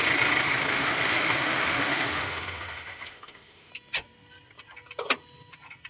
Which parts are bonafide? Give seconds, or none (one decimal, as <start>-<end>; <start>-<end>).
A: 0.0-0.7; 3.7-5.9